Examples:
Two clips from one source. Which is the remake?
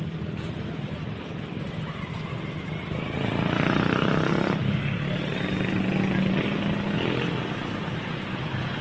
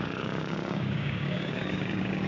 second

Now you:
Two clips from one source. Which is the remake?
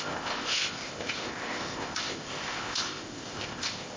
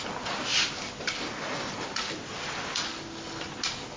first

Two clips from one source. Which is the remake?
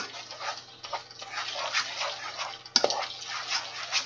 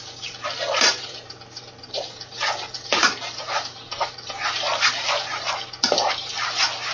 second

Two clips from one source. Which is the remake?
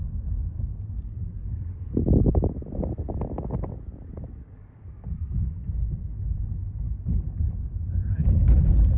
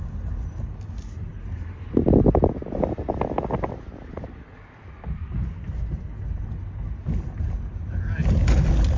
first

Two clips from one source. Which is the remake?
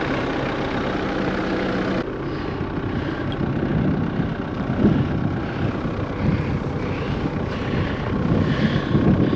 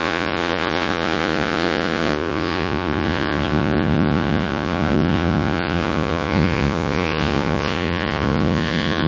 second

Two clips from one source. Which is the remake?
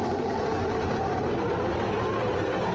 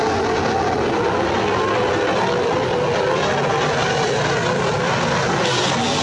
first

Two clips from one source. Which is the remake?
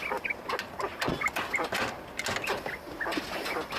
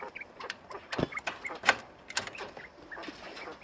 second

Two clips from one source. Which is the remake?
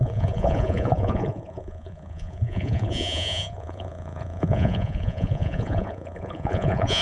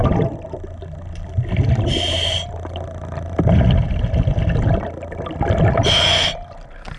first